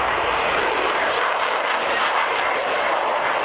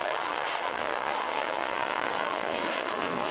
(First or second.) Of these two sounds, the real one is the first